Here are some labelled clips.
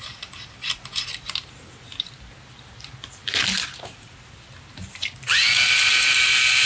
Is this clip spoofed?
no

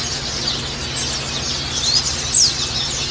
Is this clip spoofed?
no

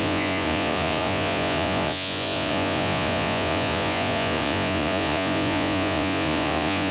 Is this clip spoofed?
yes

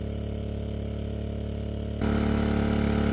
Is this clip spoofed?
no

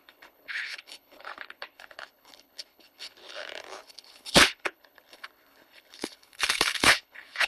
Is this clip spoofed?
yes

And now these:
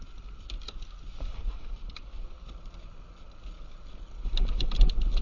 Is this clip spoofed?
no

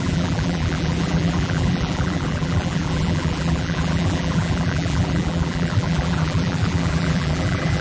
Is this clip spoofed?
yes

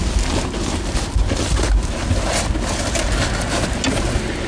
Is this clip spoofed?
no